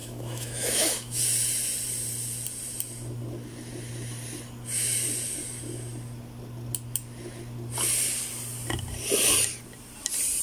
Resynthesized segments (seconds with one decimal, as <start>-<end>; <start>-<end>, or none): 0.0-1.2